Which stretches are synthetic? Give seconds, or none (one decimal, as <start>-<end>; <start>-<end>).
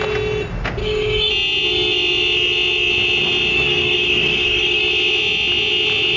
0.8-1.3; 3.5-4.8